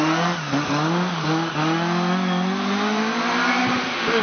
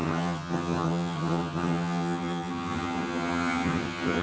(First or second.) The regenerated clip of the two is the second